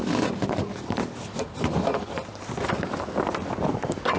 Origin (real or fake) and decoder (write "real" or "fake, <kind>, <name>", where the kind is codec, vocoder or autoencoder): real